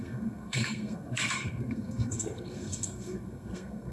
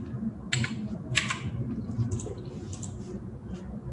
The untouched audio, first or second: second